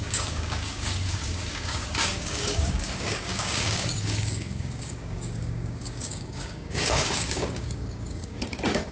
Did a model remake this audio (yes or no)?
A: yes